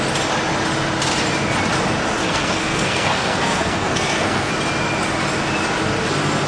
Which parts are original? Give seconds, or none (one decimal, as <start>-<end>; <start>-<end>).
0.0-2.2; 4.5-6.5